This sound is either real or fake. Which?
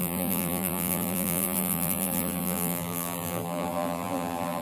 fake